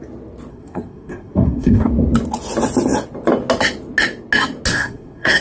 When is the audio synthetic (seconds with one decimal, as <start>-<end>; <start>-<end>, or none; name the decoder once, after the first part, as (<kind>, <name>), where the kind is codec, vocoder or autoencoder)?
0.5-1.9 (codec, SNAC); 4.7-5.4